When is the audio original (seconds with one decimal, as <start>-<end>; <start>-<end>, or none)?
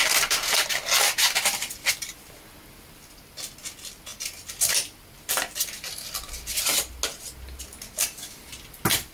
0.0-9.1